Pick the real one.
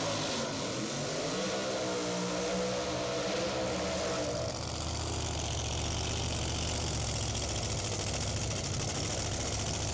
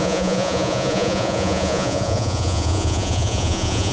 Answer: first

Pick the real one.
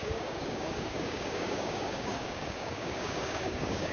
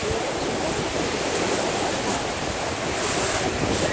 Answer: second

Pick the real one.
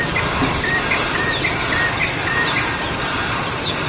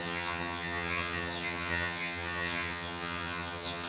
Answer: first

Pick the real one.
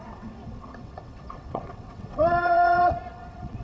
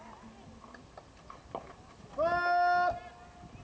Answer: second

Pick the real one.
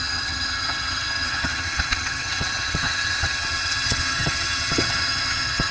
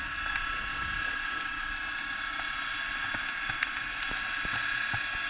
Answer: second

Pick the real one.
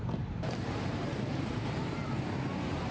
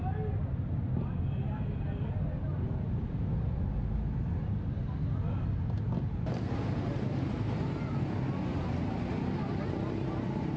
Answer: second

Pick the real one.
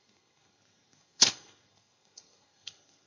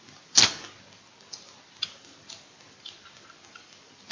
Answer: second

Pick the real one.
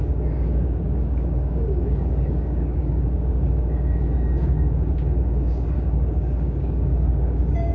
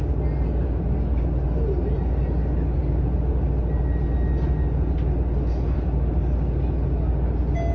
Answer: second